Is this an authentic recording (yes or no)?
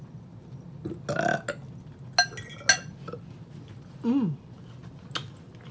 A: yes